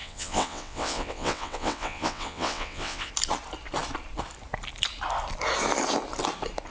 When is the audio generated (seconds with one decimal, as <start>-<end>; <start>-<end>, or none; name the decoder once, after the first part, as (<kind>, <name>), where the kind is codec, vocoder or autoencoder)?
0.0-3.1 (vocoder, WaveNeXt)